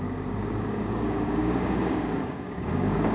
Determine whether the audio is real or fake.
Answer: fake